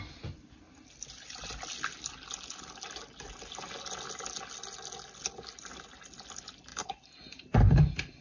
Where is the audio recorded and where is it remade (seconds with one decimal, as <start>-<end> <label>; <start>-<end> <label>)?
0.0-6.7 recorded; 6.7-8.2 remade